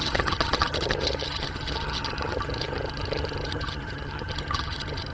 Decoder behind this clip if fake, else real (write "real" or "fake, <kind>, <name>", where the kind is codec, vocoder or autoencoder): fake, vocoder, HiFi-GAN